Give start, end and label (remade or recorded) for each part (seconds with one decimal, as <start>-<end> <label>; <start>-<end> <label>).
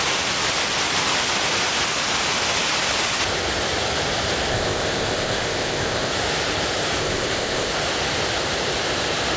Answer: 0.0-4.5 recorded; 4.5-6.1 remade; 6.1-7.0 recorded; 7.0-7.7 remade; 7.7-9.4 recorded